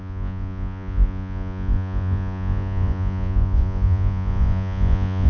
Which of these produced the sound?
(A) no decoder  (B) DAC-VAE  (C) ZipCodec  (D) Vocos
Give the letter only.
D